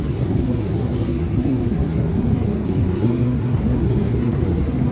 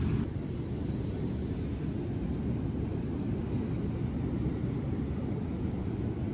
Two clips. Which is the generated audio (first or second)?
first